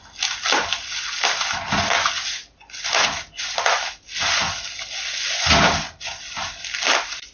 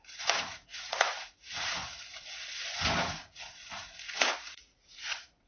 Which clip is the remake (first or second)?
second